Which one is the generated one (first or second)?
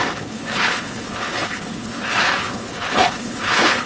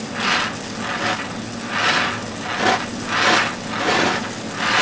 first